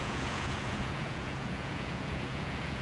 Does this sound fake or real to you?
fake